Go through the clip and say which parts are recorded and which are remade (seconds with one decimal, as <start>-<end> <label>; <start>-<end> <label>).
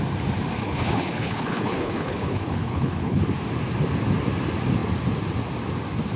0.0-0.6 recorded; 0.6-3.2 remade; 3.2-6.2 recorded